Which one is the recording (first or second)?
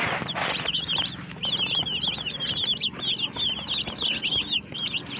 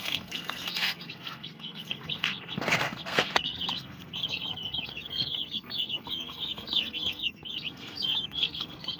first